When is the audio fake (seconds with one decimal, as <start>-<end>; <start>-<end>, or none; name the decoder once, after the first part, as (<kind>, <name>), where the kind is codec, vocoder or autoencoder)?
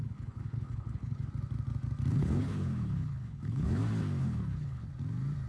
0.0-1.3 (codec, HILCodec); 2.1-3.8; 4.2-4.9